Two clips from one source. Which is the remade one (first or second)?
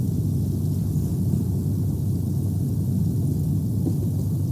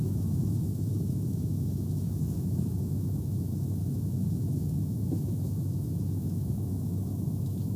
second